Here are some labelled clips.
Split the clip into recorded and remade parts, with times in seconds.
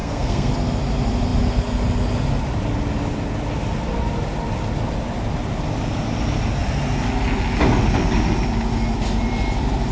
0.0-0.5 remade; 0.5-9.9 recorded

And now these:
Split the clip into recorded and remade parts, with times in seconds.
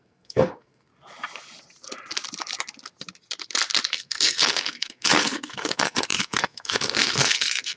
0.0-0.9 remade; 0.9-3.9 recorded; 3.9-7.8 remade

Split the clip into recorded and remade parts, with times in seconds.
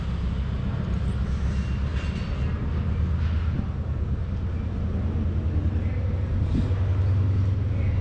0.0-8.0 recorded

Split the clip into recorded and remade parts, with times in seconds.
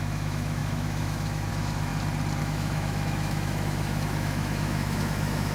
0.0-1.9 remade; 1.9-2.4 recorded; 2.4-5.5 remade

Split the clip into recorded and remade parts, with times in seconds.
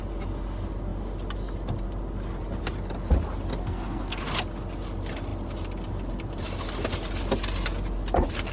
0.0-3.6 recorded; 3.6-4.2 remade; 4.2-8.5 recorded